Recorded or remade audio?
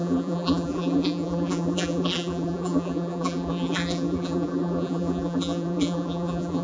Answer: remade